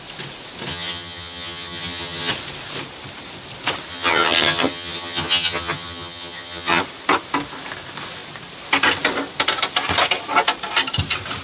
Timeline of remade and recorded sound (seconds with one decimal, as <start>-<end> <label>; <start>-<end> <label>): 0.0-0.7 recorded; 0.7-2.3 remade; 2.3-3.9 recorded; 3.9-6.8 remade; 6.8-11.4 recorded